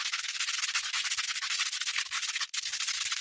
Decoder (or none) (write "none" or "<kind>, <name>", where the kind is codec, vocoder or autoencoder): none